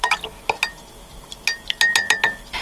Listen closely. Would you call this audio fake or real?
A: real